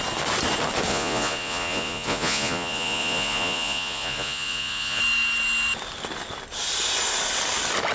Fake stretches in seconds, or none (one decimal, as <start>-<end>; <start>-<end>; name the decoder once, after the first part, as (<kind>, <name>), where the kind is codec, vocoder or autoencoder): 0.9-5.0 (vocoder, Vocos)